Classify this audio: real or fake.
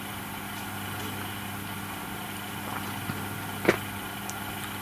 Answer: real